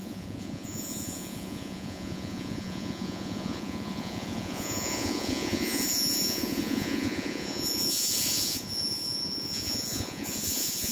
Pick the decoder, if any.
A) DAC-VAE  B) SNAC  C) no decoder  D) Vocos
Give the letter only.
D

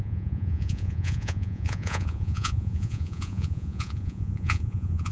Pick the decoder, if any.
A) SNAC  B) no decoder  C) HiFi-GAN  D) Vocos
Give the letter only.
D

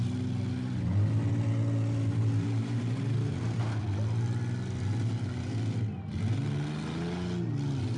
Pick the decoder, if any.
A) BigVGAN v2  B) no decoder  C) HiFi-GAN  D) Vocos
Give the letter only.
B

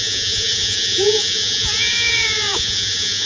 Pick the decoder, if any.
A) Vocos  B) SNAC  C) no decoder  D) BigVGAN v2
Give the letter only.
A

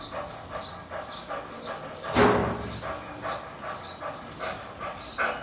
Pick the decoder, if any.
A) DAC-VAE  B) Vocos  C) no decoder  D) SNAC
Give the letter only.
C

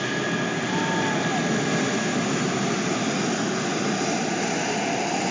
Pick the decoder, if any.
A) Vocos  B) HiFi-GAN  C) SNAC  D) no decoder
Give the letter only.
D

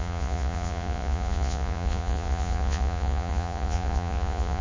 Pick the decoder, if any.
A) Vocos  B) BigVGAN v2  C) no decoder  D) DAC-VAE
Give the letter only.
A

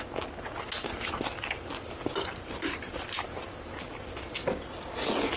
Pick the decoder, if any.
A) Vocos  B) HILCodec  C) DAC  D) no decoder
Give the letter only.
D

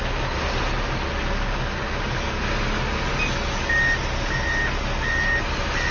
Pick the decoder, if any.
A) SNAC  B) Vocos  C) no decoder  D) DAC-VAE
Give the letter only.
C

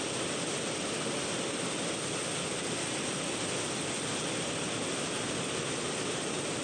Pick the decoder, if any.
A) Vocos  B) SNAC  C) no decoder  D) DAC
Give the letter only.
C